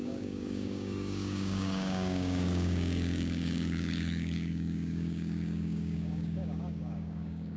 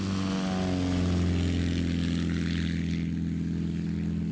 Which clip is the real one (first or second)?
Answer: second